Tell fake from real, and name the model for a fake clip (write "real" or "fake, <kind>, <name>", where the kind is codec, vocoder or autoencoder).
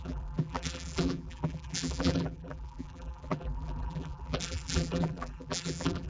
fake, vocoder, BigVGAN v2